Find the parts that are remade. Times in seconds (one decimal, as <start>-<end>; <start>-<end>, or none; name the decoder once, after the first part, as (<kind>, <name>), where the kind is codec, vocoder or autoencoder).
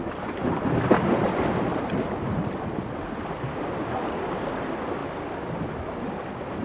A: none